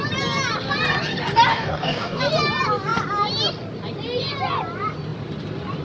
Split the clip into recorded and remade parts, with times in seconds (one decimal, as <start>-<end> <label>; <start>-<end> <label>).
0.0-1.5 recorded; 1.5-2.2 remade; 2.2-5.8 recorded